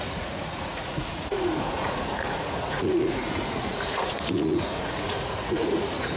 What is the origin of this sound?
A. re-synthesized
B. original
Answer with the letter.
A